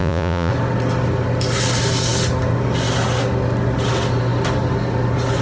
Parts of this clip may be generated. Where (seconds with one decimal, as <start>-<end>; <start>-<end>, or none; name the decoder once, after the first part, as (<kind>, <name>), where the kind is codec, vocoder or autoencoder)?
0.0-0.5 (vocoder, Vocos)